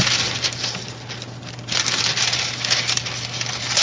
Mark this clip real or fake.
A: real